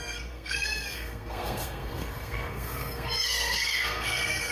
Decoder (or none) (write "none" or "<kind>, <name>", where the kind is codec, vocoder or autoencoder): codec, SNAC